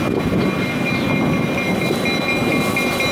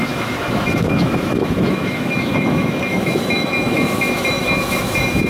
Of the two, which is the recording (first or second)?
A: first